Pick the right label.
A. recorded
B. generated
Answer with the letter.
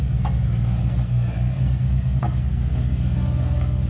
B